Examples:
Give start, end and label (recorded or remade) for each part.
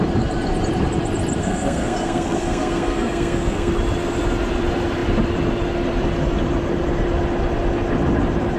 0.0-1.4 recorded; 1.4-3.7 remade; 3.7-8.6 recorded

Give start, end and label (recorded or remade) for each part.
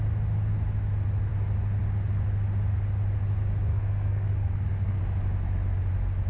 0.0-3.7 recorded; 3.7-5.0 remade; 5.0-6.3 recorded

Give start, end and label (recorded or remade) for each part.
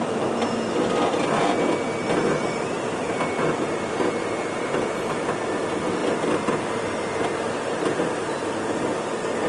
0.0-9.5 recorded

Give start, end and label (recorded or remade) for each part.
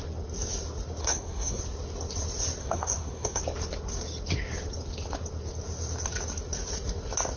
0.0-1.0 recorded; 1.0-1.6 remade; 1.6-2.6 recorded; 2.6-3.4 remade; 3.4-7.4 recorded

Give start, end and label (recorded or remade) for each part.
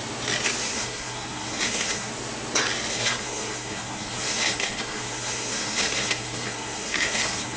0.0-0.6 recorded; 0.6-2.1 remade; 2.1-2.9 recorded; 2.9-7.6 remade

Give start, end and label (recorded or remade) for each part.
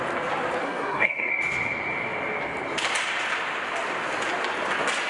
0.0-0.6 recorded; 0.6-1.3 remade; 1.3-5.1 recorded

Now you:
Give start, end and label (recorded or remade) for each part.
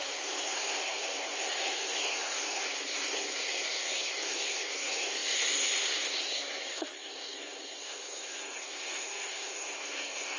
0.0-10.4 remade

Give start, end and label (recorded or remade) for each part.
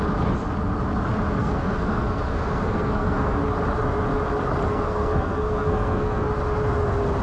0.0-1.4 recorded; 1.4-3.4 remade; 3.4-4.7 recorded; 4.7-6.3 remade; 6.3-7.2 recorded